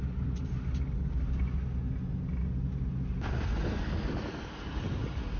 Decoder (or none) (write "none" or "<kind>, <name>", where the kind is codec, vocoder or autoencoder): none